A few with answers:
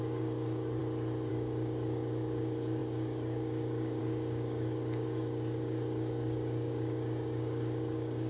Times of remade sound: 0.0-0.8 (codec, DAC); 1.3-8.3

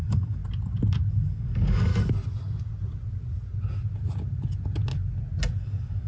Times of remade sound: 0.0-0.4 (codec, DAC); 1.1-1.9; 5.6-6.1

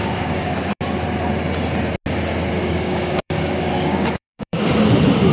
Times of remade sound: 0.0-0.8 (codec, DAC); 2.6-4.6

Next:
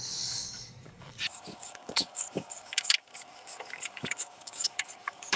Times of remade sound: 0.0-5.4 (codec, DAC)

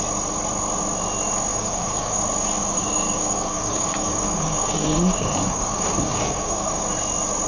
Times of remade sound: 1.5-2.2 (codec, DAC); 2.6-6.8

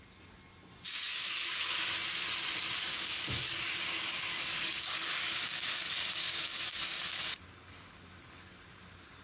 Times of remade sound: 1.1-1.7 (codec, DAC); 2.9-7.3